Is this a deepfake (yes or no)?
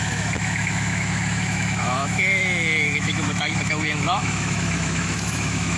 yes